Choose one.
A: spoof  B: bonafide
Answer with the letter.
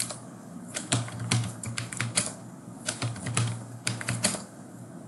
A